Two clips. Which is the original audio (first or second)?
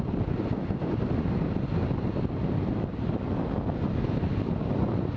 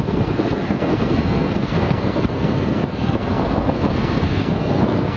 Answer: first